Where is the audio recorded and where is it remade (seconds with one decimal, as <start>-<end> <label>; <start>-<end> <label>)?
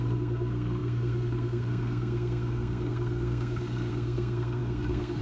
0.0-5.2 remade